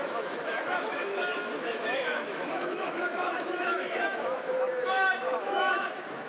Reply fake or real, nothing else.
fake